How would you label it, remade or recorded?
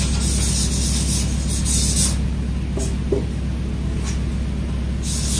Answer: recorded